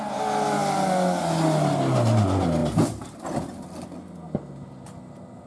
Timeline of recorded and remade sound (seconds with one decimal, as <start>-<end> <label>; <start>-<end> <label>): 0.0-5.5 recorded